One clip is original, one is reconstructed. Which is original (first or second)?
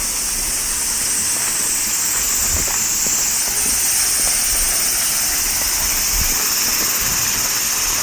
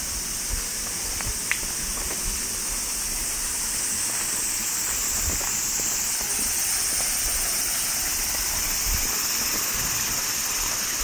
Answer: first